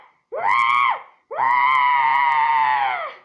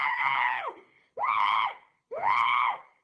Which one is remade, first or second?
second